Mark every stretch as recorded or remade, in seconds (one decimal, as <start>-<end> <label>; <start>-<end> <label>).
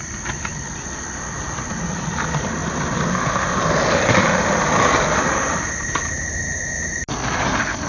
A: 0.0-7.9 recorded